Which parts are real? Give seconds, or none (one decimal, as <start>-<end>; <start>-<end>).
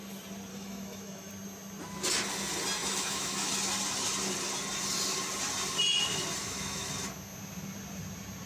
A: 0.0-0.5; 1.3-2.8; 3.5-6.4; 6.9-8.5